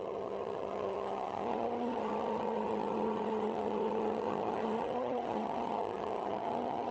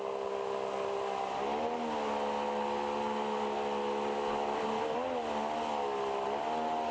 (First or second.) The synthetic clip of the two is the first